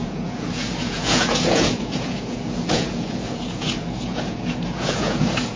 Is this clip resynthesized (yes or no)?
yes